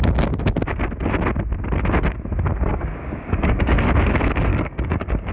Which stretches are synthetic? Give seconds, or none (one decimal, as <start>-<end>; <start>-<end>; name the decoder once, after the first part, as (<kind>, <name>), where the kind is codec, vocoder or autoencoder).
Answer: 2.7-3.7 (codec, DAC); 4.5-5.3